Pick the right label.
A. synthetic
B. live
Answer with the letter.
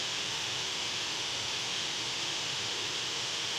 A